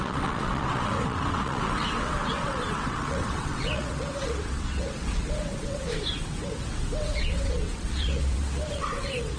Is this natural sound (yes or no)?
no